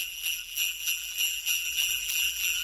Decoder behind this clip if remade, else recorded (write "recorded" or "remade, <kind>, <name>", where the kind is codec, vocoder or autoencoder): remade, vocoder, BigVGAN v2